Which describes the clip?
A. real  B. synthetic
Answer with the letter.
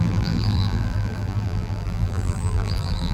B